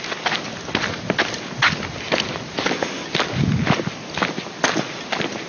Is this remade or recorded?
recorded